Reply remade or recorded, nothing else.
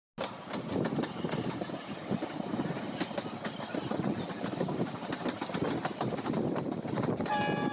recorded